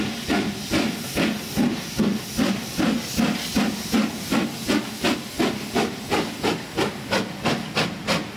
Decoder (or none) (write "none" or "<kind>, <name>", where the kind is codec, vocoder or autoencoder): none